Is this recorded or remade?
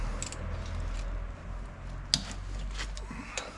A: recorded